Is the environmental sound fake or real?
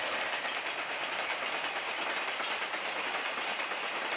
real